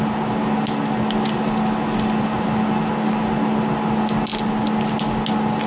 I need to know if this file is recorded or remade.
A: recorded